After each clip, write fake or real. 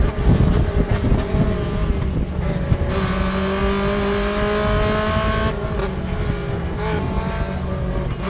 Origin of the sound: real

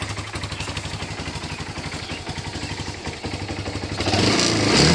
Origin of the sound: real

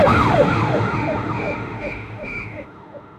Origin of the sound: fake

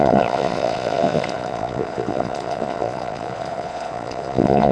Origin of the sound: fake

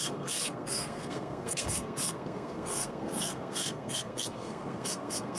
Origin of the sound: fake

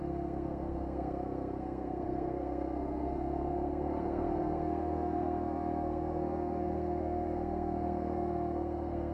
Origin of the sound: fake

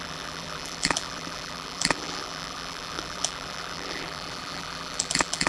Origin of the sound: fake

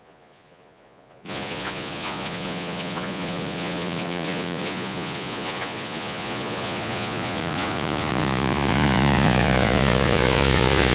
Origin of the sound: fake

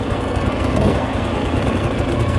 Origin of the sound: fake